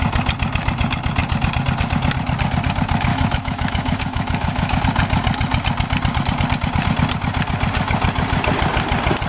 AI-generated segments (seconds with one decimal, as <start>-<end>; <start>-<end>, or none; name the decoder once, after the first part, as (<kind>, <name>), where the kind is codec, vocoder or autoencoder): 3.1-4.8 (autoencoder, DAC-VAE)